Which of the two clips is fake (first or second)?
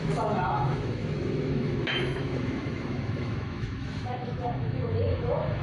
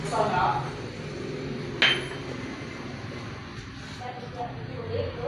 first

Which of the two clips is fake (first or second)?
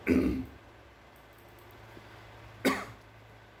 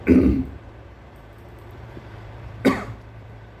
second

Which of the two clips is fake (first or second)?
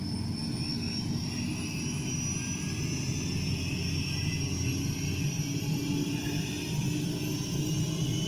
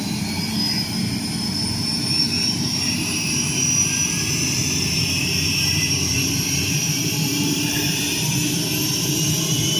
second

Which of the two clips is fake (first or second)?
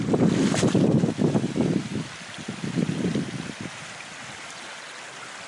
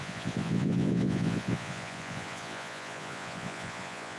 second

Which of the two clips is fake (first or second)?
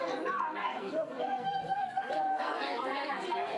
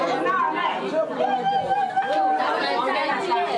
first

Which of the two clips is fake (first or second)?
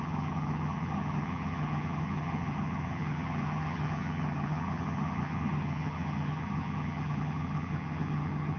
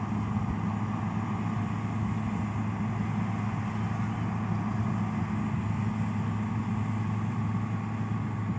first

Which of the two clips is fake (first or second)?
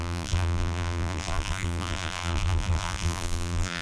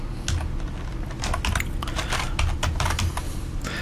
first